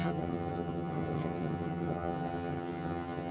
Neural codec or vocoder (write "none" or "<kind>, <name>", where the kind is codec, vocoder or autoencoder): vocoder, HiFi-GAN